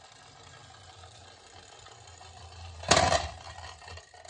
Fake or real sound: real